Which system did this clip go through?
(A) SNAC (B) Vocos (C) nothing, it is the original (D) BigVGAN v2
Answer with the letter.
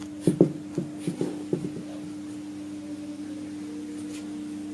C